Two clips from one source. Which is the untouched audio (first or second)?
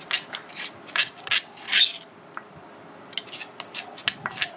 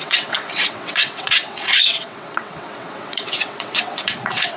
first